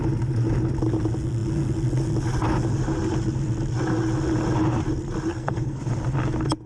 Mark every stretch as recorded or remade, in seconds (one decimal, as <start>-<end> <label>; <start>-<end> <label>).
0.0-5.3 recorded; 5.3-5.8 remade; 5.8-6.7 recorded